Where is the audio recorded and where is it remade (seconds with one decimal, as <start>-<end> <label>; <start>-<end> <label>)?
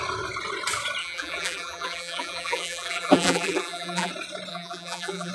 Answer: 0.0-1.0 recorded; 1.0-4.1 remade; 4.1-4.5 recorded; 4.5-5.3 remade